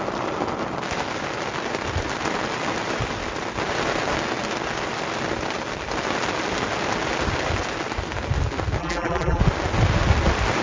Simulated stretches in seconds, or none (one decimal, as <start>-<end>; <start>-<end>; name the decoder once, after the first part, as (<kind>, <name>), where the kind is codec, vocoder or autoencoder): 8.8-9.4 (vocoder, BigVGAN v2)